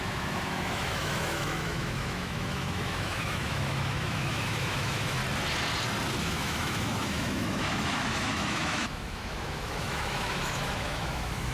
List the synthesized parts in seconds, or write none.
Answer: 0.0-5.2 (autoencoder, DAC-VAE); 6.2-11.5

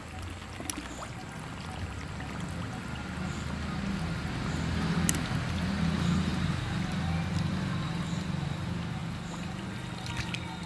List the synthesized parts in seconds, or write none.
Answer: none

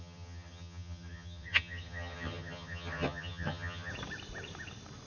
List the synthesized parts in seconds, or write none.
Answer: 0.0-3.9 (vocoder, HiFi-GAN)

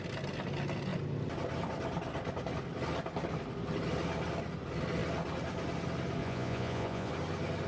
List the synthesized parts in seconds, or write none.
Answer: 6.2-7.1 (vocoder, Vocos)

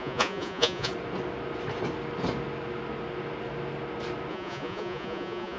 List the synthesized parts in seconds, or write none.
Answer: 0.0-0.9 (vocoder, Vocos); 4.3-5.6